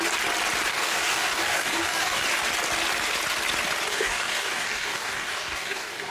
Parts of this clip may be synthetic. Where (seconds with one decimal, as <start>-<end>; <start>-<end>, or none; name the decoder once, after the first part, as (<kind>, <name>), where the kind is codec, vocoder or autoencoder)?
0.7-2.2 (codec, DAC); 3.9-6.1